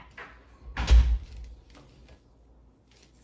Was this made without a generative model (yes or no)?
yes